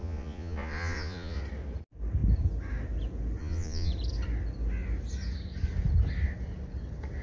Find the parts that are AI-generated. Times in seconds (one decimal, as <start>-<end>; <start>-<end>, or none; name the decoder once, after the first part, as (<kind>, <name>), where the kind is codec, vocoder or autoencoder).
0.0-1.4 (vocoder, Vocos); 3.4-3.9